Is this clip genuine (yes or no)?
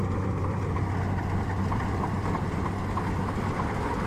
no